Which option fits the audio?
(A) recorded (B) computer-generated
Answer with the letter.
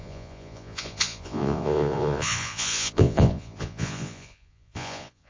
B